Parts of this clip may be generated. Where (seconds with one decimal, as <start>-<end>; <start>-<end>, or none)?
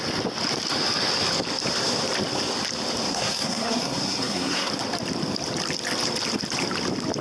3.1-4.7